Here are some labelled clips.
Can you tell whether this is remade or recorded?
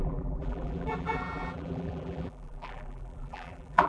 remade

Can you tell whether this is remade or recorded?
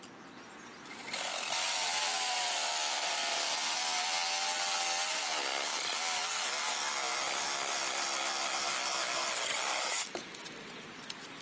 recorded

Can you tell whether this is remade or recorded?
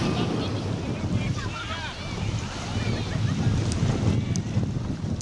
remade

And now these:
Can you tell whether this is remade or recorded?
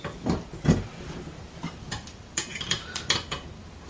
remade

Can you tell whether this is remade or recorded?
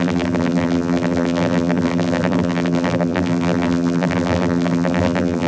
remade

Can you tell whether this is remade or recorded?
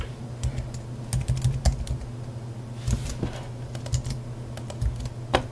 recorded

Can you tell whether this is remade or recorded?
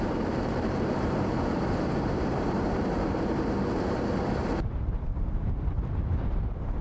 remade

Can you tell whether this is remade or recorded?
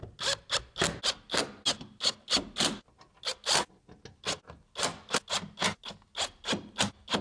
recorded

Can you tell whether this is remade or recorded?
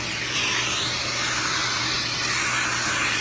remade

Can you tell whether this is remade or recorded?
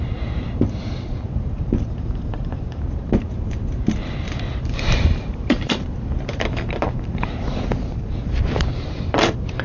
remade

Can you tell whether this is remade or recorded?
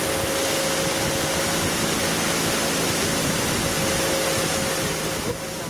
recorded